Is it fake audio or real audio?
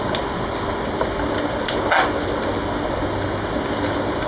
real